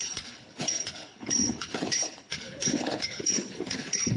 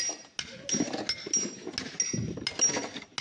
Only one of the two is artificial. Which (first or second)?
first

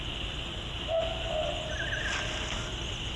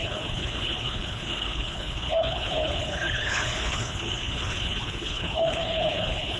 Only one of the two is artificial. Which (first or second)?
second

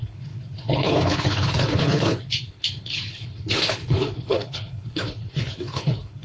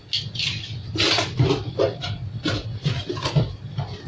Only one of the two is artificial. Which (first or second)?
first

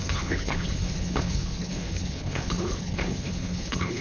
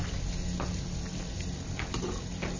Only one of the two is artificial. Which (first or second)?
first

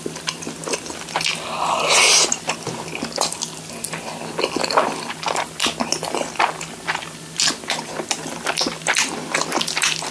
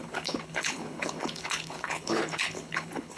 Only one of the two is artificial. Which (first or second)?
second